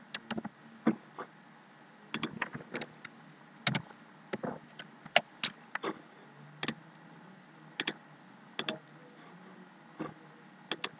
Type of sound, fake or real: real